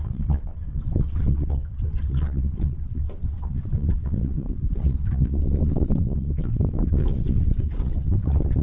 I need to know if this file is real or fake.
fake